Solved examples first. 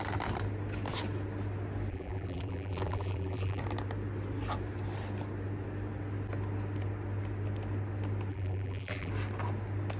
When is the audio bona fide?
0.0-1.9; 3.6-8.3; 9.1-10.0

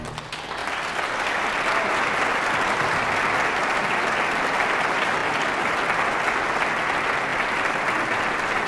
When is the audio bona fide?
0.0-8.7

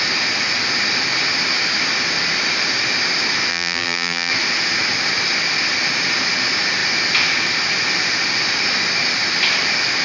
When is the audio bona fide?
0.0-3.5; 4.3-10.0

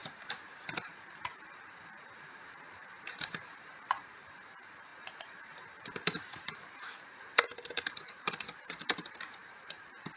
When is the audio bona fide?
none

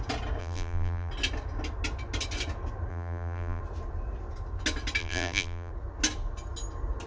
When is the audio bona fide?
0.0-0.4; 1.1-2.9; 3.6-5.0; 5.7-7.1